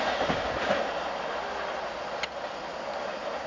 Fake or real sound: real